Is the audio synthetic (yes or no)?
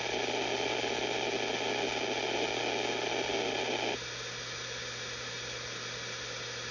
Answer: no